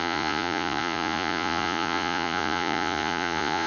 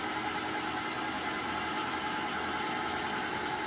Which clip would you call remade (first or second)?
first